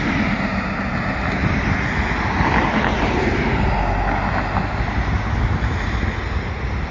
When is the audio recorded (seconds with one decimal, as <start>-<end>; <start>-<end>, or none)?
0.0-6.9